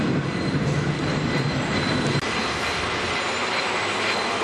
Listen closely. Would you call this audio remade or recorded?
recorded